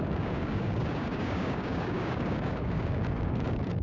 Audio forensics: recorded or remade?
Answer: remade